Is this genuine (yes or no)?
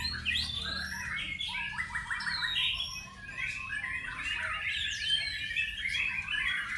yes